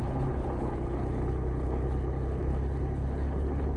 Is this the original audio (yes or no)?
no